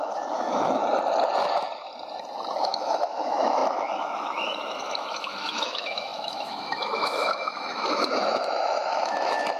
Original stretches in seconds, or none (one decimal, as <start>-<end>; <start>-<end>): 0.8-2.6